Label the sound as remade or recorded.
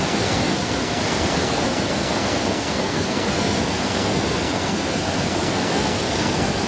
remade